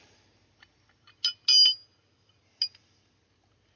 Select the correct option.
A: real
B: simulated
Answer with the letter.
A